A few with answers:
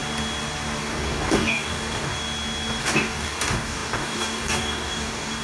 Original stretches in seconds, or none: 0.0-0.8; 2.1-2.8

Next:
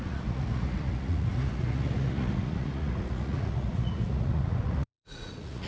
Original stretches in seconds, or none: none